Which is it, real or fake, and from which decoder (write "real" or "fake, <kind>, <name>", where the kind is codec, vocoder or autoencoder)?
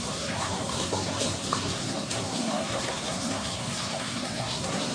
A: fake, codec, SNAC